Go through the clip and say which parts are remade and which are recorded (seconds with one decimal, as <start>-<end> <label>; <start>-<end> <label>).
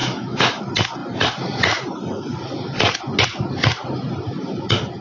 0.0-0.6 remade; 0.6-5.0 recorded